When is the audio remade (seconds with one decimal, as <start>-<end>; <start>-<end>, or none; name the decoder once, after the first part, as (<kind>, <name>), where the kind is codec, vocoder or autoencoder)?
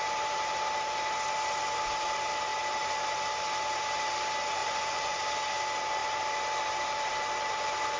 4.6-5.2 (vocoder, Vocos)